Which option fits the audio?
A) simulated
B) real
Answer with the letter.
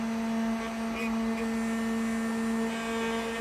B